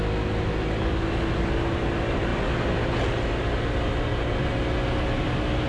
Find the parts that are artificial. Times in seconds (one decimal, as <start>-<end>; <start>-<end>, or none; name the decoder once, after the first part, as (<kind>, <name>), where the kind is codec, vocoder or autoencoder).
none